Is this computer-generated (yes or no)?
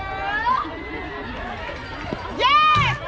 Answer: no